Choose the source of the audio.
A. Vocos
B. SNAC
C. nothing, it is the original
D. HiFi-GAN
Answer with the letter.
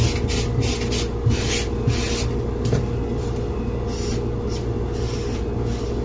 C